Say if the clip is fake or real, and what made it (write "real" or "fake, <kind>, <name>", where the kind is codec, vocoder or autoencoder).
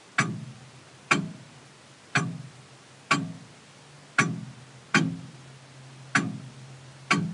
real